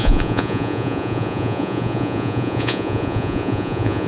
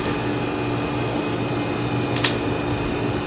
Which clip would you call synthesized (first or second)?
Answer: first